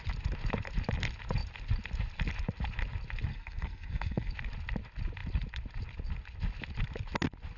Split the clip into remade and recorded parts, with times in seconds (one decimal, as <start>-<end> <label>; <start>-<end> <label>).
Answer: 0.0-3.3 recorded; 3.3-4.3 remade; 4.3-7.6 recorded